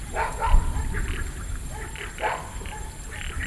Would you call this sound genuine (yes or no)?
yes